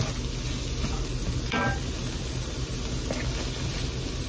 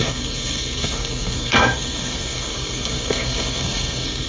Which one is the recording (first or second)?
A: first